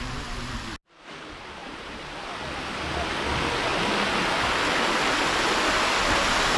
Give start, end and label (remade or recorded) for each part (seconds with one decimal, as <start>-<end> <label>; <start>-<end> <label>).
0.0-1.6 recorded; 1.6-2.3 remade; 2.3-6.6 recorded